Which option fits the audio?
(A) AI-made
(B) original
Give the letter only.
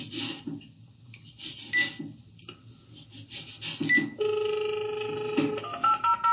B